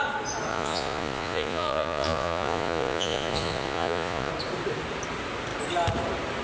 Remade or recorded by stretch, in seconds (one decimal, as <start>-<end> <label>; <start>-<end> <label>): 0.0-0.5 recorded; 0.5-4.3 remade; 4.3-6.4 recorded